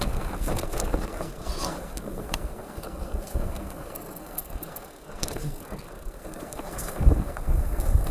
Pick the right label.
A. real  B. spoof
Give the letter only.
B